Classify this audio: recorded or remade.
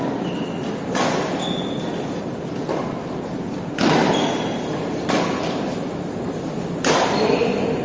recorded